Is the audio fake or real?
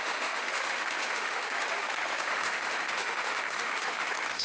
fake